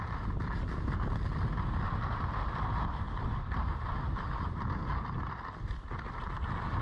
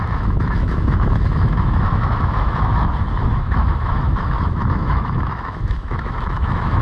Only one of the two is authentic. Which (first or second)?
first